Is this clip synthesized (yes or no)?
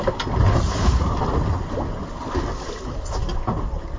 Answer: no